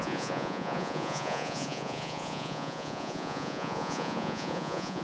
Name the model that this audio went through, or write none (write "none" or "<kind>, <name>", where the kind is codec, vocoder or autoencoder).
vocoder, Vocos